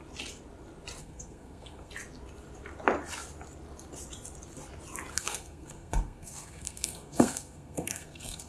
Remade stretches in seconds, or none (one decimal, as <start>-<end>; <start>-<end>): 1.0-1.9; 5.1-8.5